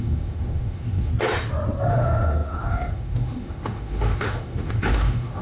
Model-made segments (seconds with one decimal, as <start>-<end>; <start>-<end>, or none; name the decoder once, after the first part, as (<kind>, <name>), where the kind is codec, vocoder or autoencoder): 0.0-1.1 (autoencoder, DAC-VAE); 1.9-5.4